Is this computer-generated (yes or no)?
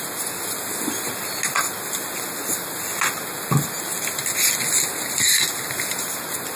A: no